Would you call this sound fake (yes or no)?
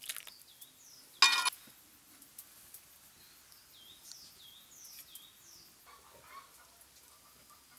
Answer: no